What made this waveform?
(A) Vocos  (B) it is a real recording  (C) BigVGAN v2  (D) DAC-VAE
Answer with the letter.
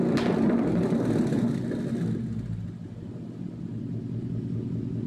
B